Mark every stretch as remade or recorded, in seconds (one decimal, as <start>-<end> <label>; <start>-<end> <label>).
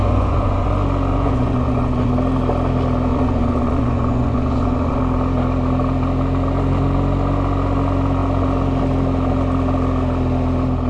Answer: 0.0-0.7 remade; 0.7-1.1 recorded; 1.1-2.1 remade; 2.1-3.1 recorded; 3.1-5.0 remade; 5.0-10.9 recorded